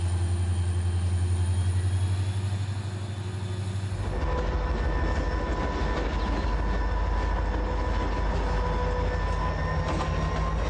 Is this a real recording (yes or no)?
yes